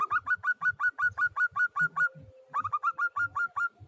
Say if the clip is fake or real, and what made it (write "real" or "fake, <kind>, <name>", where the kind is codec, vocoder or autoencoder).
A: real